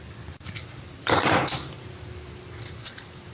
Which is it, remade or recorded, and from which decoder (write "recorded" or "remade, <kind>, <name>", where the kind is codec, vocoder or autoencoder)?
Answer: remade, vocoder, BigVGAN v2